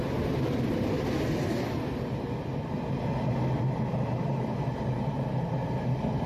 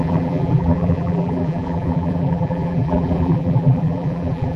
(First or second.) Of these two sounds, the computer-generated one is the second